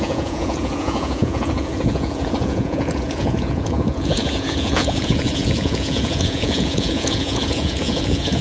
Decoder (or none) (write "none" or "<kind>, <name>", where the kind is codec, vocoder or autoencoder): vocoder, Vocos